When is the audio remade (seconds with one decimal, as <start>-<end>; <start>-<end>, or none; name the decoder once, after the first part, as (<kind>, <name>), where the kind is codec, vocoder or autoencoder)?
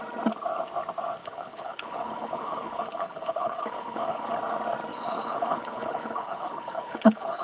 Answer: 1.2-4.3 (codec, HILCodec); 4.9-7.4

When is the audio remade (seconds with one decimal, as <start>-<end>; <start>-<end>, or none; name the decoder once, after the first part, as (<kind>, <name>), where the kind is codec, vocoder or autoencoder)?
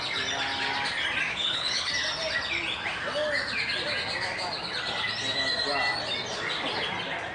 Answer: 1.3-1.9 (codec, HILCodec)